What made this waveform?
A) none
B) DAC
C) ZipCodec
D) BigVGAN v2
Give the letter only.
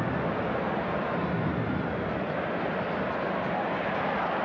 A